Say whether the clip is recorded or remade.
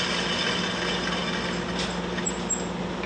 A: recorded